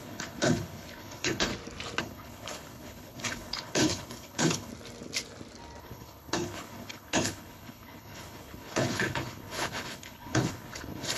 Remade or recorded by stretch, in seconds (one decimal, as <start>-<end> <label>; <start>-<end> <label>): 0.0-1.5 remade; 1.5-2.0 recorded; 2.0-4.7 remade; 4.7-5.8 recorded; 5.8-11.2 remade